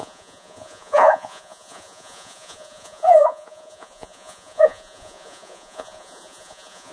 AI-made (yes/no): yes